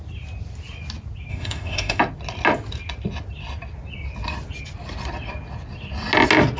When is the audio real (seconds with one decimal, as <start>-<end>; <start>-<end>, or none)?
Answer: 0.0-1.3; 2.0-6.6

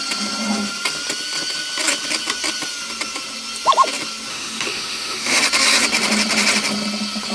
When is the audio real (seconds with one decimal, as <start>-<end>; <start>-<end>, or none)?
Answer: 0.0-4.3; 5.4-7.3

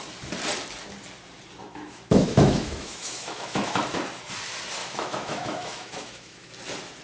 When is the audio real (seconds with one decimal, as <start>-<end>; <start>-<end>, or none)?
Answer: 0.0-1.6; 3.8-4.8; 6.5-7.0